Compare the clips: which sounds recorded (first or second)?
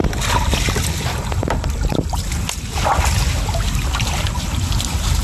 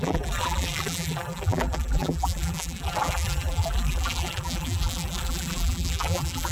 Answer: first